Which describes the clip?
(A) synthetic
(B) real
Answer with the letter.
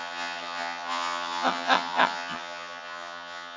A